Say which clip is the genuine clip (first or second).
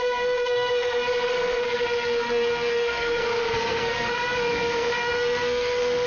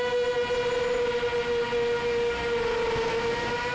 second